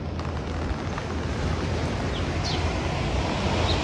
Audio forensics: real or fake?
real